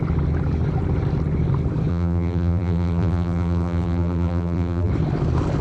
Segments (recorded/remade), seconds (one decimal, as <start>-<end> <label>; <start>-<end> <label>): 0.0-1.9 recorded; 1.9-4.9 remade; 4.9-5.6 recorded